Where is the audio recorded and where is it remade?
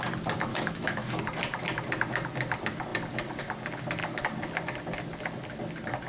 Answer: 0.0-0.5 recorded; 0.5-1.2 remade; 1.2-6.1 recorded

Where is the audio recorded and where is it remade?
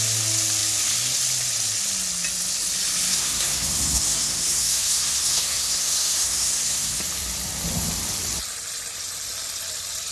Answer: 0.0-3.1 recorded; 3.1-7.0 remade; 7.0-10.1 recorded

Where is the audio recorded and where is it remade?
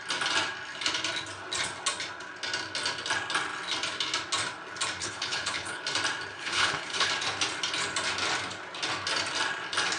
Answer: 0.0-5.0 recorded; 5.0-5.8 remade; 5.8-6.3 recorded; 6.3-7.1 remade; 7.1-10.0 recorded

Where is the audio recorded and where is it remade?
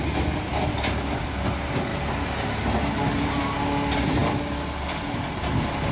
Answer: 0.0-5.9 recorded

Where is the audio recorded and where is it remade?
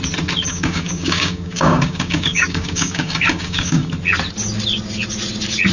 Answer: 0.0-0.5 recorded; 0.5-3.9 remade; 3.9-5.7 recorded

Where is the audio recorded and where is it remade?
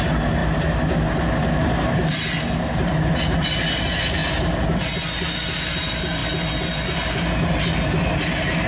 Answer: 0.0-8.7 recorded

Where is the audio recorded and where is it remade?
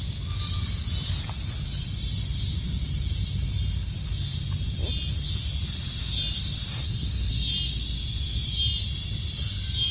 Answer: 0.0-6.7 recorded; 6.7-7.3 remade; 7.3-9.9 recorded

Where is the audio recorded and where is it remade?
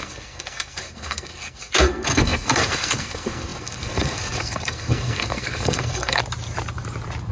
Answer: 0.0-6.2 remade; 6.2-7.3 recorded